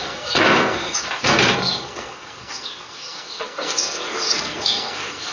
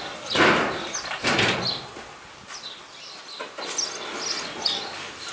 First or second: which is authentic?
second